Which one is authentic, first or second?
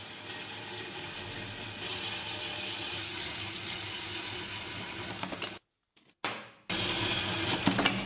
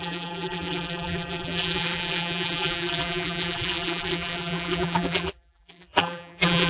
first